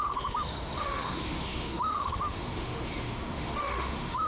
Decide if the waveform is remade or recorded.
remade